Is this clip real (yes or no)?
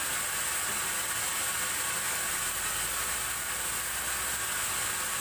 yes